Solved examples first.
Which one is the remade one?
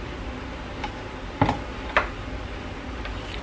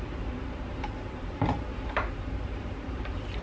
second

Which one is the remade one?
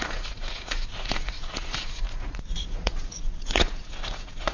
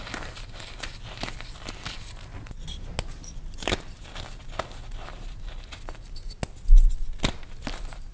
first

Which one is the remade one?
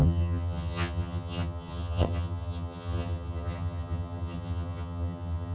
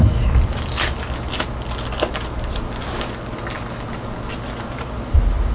first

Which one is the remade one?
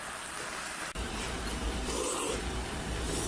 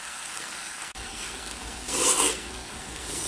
second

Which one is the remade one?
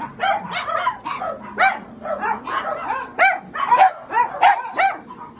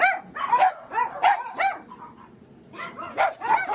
second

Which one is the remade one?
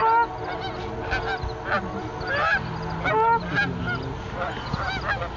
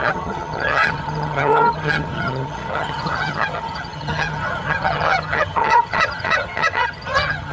second